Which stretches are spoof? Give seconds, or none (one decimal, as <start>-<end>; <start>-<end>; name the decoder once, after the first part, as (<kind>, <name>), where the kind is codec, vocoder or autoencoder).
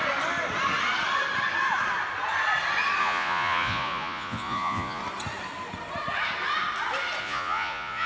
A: 3.0-5.0 (vocoder, Vocos); 7.2-8.1